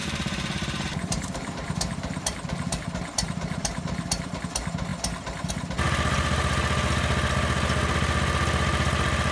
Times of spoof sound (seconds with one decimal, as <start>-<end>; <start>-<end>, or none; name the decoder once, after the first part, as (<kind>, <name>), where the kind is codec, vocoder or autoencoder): 0.0-4.4 (vocoder, BigVGAN v2)